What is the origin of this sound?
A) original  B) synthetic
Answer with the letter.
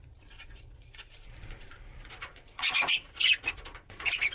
B